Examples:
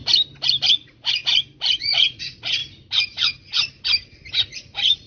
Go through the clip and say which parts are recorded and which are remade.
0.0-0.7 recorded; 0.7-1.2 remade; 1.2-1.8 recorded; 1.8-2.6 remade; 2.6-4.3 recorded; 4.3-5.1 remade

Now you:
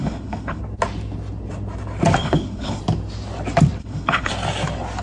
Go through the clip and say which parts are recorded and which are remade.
0.0-0.6 remade; 0.6-2.2 recorded; 2.2-2.8 remade; 2.8-3.8 recorded; 3.8-4.3 remade; 4.3-5.0 recorded

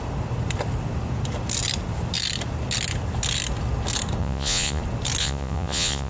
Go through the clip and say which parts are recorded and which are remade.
0.0-4.2 recorded; 4.2-4.8 remade; 4.8-5.2 recorded; 5.2-6.1 remade

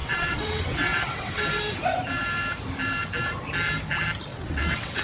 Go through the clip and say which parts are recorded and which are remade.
0.0-1.4 remade; 1.4-4.3 recorded; 4.3-5.0 remade

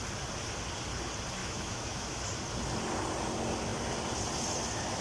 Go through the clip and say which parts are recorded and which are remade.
0.0-1.4 recorded; 1.4-2.2 remade; 2.2-5.0 recorded

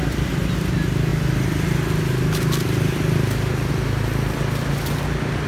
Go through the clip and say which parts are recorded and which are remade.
0.0-5.5 recorded